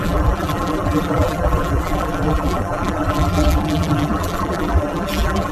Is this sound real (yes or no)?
no